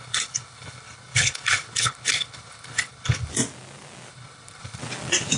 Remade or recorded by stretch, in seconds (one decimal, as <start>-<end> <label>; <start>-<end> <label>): 0.0-3.3 remade; 3.3-4.1 recorded; 4.1-4.8 remade; 4.8-5.4 recorded